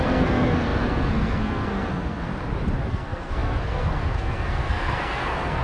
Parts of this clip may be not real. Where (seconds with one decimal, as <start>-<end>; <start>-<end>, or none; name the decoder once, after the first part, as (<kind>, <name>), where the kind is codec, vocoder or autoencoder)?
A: 0.0-2.3 (codec, SNAC); 2.9-5.6